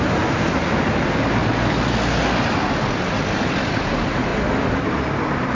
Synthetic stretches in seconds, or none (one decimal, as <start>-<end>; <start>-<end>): 0.0-1.4; 3.8-4.3